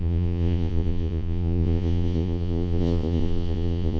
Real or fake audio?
fake